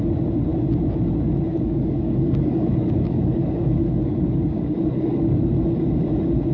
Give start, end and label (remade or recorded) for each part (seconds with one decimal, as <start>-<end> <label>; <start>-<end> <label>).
0.0-1.5 recorded; 1.5-5.4 remade; 5.4-6.5 recorded